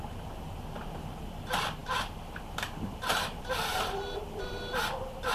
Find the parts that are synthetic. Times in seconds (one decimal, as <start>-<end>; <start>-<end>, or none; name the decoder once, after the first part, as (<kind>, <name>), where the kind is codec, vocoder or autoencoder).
1.8-4.7 (vocoder, BigVGAN v2)